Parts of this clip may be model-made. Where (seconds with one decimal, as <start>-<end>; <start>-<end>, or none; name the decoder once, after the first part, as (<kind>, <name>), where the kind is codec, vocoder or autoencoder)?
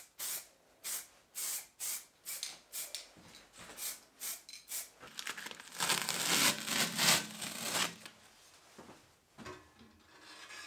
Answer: none